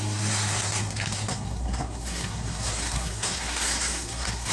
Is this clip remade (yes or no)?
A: yes